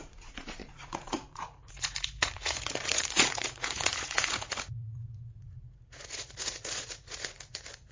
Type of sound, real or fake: fake